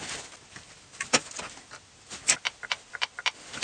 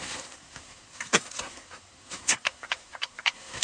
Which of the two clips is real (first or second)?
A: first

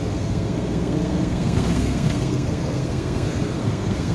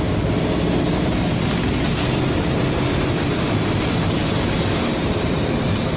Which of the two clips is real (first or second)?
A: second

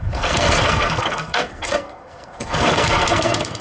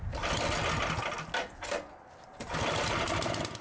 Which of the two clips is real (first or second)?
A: second